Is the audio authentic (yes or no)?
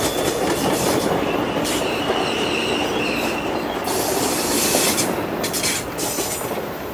yes